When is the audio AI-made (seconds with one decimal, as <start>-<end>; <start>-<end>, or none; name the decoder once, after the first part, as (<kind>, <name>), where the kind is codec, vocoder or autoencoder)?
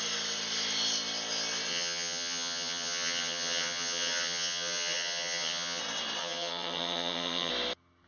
1.7-5.8 (vocoder, HiFi-GAN); 6.2-7.5